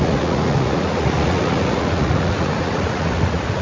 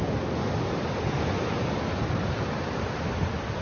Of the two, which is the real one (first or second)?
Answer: second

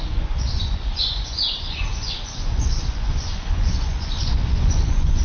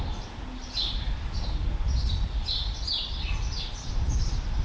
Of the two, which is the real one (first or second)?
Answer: second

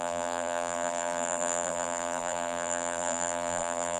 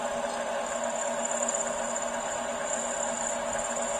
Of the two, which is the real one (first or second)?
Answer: second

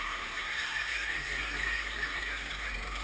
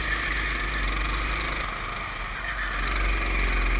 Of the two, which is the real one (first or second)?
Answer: second